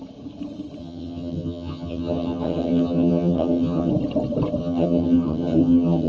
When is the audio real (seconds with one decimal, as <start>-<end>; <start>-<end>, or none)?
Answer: 0.0-0.8; 3.9-4.6